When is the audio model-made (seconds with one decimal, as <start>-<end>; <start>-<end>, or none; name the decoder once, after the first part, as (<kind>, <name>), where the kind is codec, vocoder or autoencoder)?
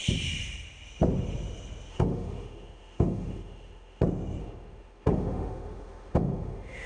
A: 1.9-4.0 (autoencoder, DAC-VAE); 4.4-6.9